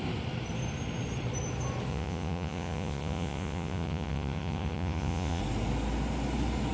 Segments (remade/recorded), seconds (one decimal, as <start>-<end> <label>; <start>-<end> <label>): 0.0-1.9 recorded; 1.9-5.4 remade; 5.4-6.7 recorded